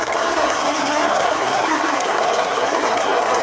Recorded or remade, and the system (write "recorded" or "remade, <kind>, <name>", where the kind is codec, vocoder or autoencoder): remade, codec, SNAC